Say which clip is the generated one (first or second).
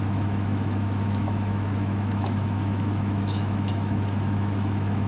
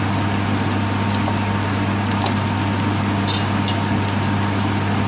first